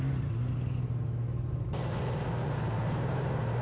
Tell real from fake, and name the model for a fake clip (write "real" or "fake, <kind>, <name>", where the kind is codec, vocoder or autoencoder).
real